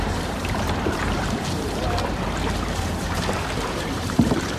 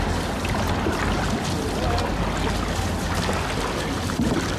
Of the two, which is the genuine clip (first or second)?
second